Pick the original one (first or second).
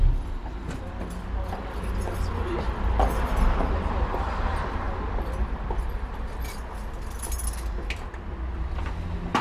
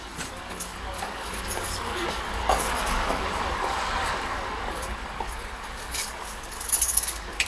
first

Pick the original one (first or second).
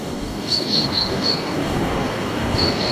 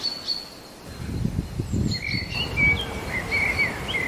second